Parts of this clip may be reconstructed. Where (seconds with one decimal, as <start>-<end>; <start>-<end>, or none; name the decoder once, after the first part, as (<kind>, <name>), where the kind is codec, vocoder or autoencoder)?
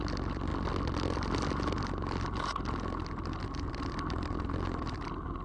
none